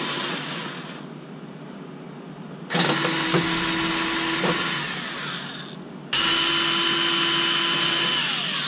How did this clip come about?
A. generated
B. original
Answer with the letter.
B